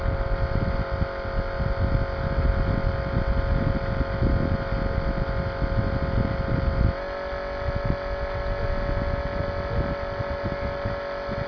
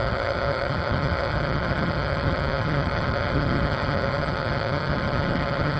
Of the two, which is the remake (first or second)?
second